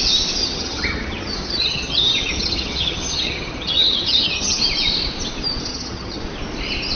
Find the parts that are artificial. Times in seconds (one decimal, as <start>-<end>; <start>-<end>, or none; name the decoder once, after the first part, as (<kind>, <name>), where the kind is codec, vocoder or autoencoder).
0.4-4.6 (vocoder, HiFi-GAN); 5.7-6.2